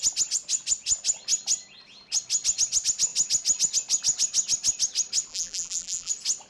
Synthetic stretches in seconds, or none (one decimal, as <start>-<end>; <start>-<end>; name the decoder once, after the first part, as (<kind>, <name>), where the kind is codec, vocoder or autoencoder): 5.3-6.1 (vocoder, BigVGAN v2)